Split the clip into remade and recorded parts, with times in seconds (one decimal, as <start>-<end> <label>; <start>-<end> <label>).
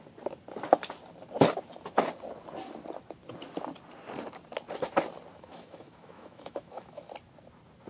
0.0-5.3 recorded; 5.3-7.0 remade; 7.0-7.9 recorded